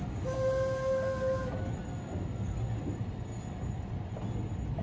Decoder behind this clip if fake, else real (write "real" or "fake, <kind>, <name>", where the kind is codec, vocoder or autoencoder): real